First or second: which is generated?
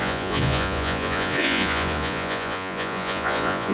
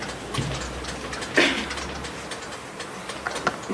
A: first